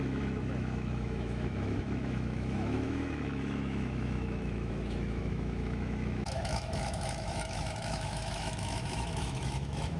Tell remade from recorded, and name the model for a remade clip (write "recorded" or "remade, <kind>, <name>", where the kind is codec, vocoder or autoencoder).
remade, autoencoder, DAC-VAE